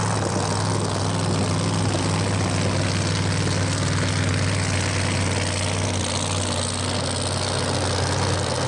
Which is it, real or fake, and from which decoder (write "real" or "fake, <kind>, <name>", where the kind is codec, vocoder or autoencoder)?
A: real